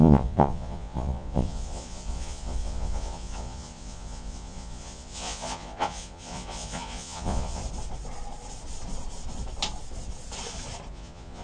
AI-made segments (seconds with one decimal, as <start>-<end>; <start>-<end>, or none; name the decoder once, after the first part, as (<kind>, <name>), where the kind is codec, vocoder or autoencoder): 0.0-7.6 (vocoder, Vocos); 10.9-11.4